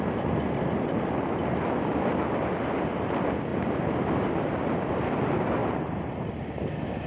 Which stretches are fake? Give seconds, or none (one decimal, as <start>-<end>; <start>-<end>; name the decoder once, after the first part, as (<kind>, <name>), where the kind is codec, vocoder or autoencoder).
none